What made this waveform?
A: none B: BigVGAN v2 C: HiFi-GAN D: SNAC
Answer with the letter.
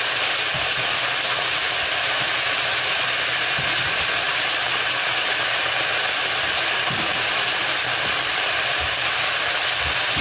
A